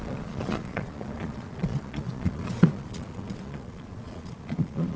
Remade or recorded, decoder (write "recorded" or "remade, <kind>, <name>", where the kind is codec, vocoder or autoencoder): remade, vocoder, Vocos